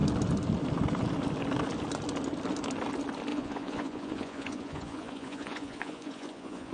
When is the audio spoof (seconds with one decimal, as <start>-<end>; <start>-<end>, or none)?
3.3-6.7